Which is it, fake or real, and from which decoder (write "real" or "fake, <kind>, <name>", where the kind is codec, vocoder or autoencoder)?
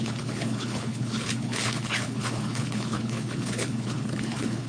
fake, codec, HILCodec